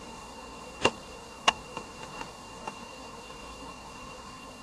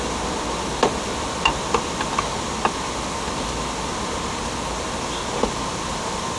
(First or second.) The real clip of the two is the second